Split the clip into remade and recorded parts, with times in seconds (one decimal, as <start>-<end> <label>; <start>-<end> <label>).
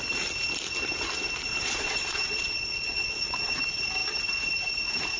0.0-1.5 recorded; 1.5-3.6 remade; 3.6-5.2 recorded